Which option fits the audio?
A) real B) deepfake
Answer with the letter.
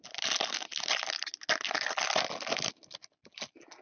A